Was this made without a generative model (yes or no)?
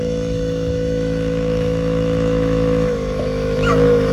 no